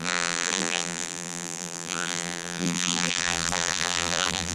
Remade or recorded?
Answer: remade